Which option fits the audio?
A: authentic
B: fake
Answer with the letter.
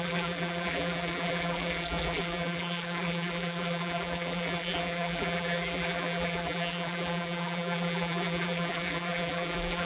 B